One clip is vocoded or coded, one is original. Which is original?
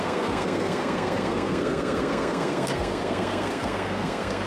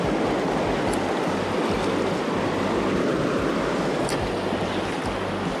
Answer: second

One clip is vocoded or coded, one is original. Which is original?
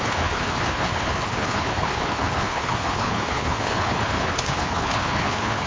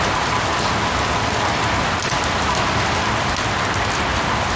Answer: second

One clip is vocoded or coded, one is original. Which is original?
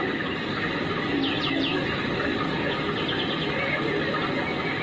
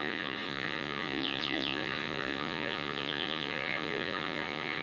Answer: first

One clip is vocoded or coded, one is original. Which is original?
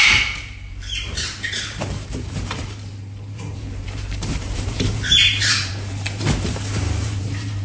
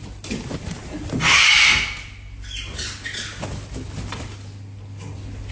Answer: second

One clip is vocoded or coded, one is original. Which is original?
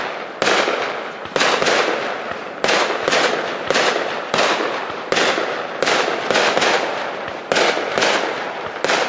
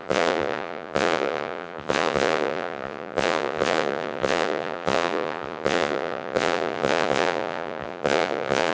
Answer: first